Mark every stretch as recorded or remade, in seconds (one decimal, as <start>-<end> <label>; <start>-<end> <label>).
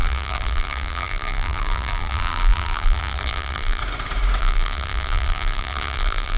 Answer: 0.0-3.8 remade; 3.8-4.4 recorded; 4.4-6.4 remade